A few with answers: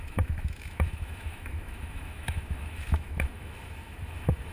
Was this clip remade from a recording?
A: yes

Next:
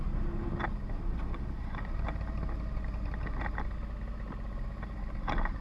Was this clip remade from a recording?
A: no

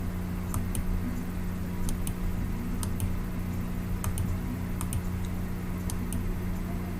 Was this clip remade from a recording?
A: no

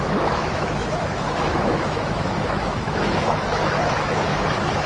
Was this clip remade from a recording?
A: yes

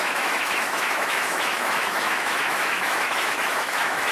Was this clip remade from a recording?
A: yes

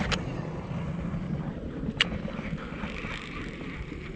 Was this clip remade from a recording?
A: no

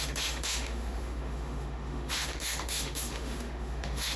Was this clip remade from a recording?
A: yes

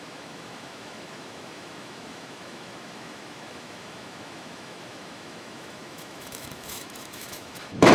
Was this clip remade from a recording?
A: yes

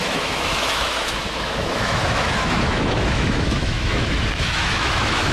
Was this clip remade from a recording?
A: yes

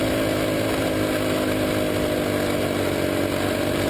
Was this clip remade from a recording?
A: no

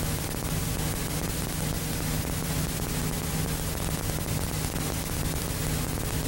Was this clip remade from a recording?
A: no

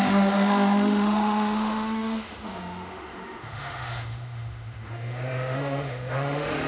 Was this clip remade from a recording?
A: yes